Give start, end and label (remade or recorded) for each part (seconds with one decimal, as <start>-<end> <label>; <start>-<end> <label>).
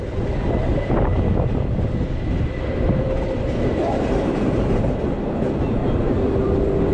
0.0-1.1 recorded; 1.1-5.0 remade; 5.0-5.8 recorded; 5.8-6.9 remade